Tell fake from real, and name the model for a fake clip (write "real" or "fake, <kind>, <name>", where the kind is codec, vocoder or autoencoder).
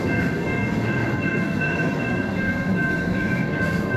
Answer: fake, codec, SNAC